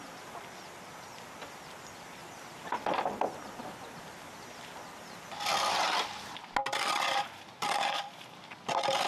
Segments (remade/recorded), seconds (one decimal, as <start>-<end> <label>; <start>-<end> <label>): 0.0-7.6 recorded; 7.6-8.4 remade; 8.4-9.1 recorded